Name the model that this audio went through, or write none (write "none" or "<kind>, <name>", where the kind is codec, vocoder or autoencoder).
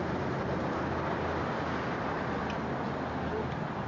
none